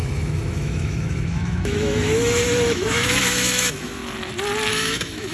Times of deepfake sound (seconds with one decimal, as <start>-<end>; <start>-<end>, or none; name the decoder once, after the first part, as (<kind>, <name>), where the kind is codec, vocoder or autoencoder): 0.0-4.0 (autoencoder, DAC-VAE); 4.7-5.3